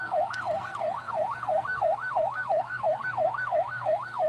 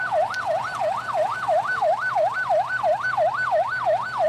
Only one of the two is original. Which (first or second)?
second